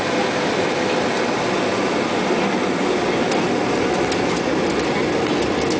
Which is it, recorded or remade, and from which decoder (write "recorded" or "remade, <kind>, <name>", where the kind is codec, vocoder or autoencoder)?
recorded